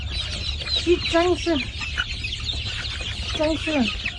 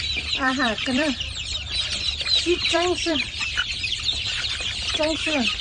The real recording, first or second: first